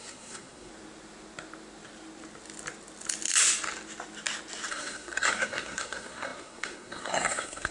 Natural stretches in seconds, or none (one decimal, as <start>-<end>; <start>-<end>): 0.7-4.7